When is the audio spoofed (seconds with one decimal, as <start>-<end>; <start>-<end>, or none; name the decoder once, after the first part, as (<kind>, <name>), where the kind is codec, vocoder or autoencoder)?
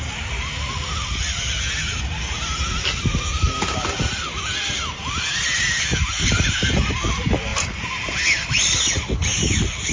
none